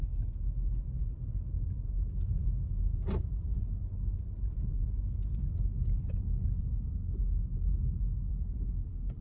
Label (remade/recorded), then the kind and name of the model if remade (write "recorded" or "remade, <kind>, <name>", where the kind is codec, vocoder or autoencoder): recorded